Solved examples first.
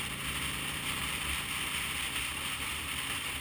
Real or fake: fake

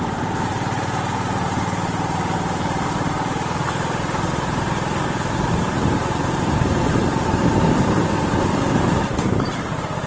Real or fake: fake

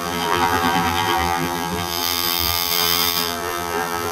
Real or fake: fake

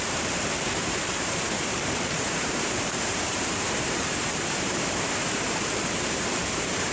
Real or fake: fake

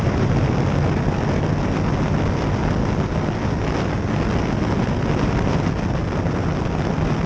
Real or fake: real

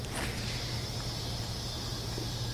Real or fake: real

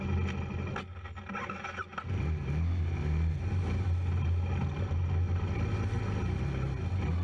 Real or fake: real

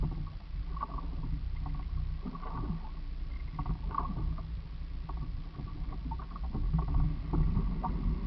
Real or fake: real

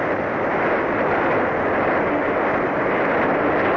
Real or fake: real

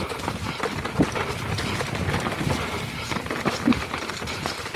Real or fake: real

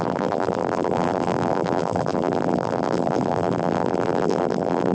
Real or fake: fake